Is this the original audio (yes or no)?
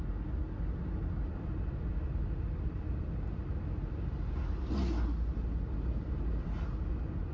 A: yes